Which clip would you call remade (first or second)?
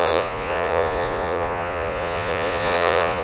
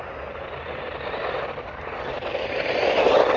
first